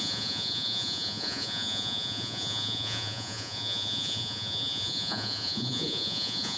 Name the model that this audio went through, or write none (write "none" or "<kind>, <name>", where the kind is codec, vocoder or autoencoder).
vocoder, Vocos